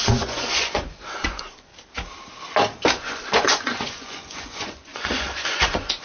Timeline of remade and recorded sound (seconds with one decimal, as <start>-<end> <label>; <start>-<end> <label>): 0.0-1.7 remade; 1.7-2.9 recorded; 2.9-6.0 remade